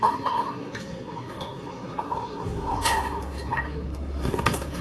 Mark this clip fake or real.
fake